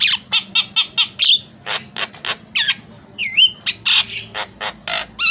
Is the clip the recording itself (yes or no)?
yes